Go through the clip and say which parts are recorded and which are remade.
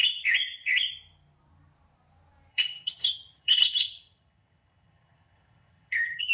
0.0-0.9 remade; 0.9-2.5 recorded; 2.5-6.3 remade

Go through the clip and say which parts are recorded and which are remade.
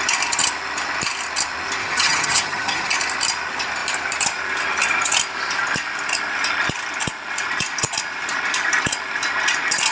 0.0-1.8 recorded; 1.8-2.9 remade; 2.9-9.9 recorded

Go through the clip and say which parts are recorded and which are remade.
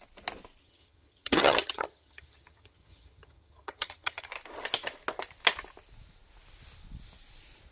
0.0-0.6 recorded; 0.6-4.3 remade; 4.3-7.7 recorded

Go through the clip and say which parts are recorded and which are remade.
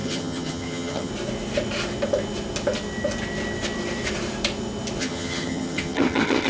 0.0-1.1 remade; 1.1-5.0 recorded; 5.0-6.5 remade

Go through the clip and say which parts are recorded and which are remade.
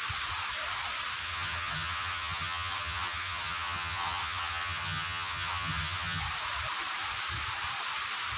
0.0-1.2 recorded; 1.2-6.2 remade; 6.2-8.4 recorded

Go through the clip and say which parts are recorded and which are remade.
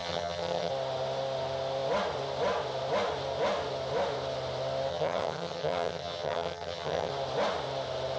0.0-0.7 remade; 0.7-4.9 recorded; 4.9-7.1 remade; 7.1-8.2 recorded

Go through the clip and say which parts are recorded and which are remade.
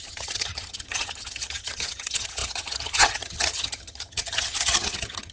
0.0-5.3 remade